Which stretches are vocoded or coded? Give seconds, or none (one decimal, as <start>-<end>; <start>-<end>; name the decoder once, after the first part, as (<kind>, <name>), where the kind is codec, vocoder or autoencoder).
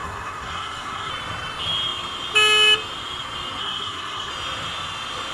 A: 0.0-1.1 (codec, SNAC); 3.6-4.3